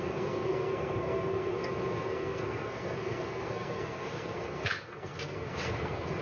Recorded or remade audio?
remade